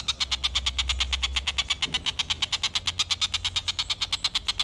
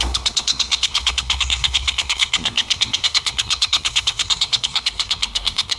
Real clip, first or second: first